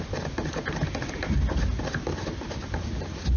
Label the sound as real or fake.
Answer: real